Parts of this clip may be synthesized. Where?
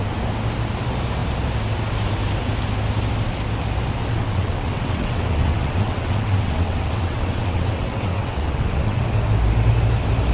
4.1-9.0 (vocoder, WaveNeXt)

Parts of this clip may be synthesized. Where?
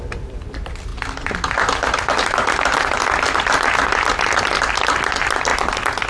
0.0-0.9 (vocoder, BigVGAN v2); 4.4-5.5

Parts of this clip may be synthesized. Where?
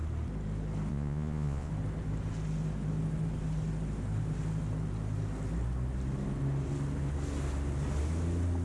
0.9-1.7 (vocoder, Vocos)